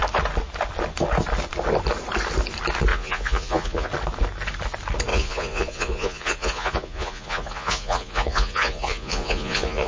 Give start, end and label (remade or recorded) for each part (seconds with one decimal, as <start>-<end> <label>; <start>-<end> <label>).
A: 0.0-2.9 recorded; 2.9-3.9 remade; 3.9-5.1 recorded; 5.1-9.9 remade